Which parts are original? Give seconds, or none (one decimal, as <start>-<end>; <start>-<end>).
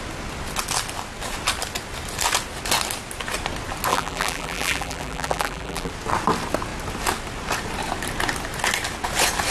0.0-3.9; 5.9-9.5